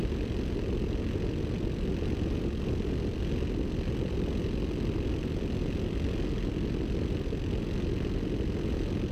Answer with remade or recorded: recorded